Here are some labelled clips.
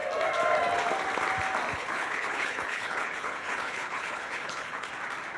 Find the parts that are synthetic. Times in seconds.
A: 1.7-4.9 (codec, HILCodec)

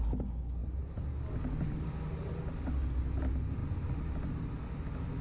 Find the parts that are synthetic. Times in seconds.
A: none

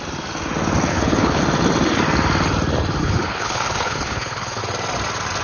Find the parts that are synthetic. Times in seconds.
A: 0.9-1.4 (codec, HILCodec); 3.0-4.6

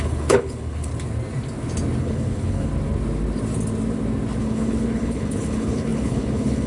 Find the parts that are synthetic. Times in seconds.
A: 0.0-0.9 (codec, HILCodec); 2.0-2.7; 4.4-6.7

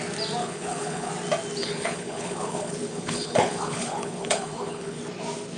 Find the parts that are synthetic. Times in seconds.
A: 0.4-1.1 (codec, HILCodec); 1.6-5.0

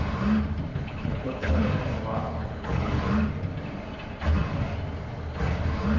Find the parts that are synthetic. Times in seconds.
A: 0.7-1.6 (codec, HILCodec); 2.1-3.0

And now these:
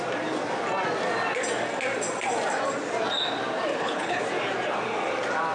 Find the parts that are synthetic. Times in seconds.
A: 3.7-4.2 (codec, HILCodec)